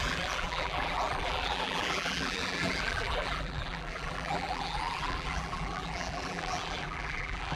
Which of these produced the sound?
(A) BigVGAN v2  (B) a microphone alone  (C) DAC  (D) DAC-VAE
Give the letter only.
A